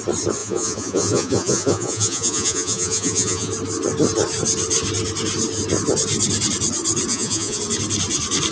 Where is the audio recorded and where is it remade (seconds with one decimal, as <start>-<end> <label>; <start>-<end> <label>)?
0.0-0.4 recorded; 0.4-3.5 remade; 3.5-7.1 recorded; 7.1-7.6 remade; 7.6-8.5 recorded

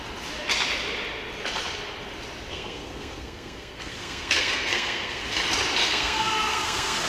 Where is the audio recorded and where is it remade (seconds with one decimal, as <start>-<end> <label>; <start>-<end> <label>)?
0.0-2.5 recorded; 2.5-5.2 remade; 5.2-5.8 recorded; 5.8-7.1 remade

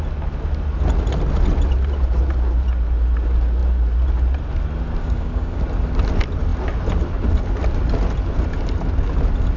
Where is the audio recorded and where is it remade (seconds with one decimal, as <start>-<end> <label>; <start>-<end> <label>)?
0.0-5.0 recorded; 5.0-5.6 remade; 5.6-9.6 recorded

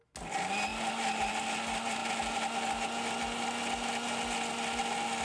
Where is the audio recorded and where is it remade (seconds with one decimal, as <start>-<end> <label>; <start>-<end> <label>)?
0.0-5.2 recorded

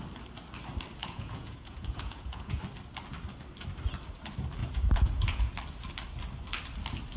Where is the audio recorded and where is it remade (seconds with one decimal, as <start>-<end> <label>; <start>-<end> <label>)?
0.0-1.0 recorded; 1.0-2.6 remade; 2.6-4.6 recorded; 4.6-5.5 remade; 5.5-7.2 recorded

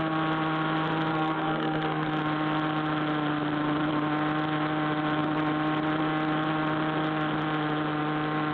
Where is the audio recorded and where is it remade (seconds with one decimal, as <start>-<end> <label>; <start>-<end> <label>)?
0.0-1.1 recorded; 1.1-2.1 remade; 2.1-8.5 recorded

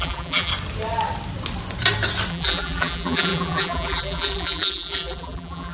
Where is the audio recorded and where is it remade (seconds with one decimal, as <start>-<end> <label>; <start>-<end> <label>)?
0.0-0.5 remade; 0.5-2.3 recorded; 2.3-5.7 remade